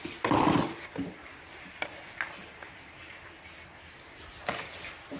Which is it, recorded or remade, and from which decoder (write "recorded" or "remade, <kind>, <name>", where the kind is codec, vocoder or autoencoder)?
recorded